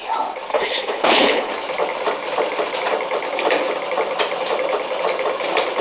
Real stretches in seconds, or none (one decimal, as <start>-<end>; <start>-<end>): 0.0-0.5; 1.5-5.8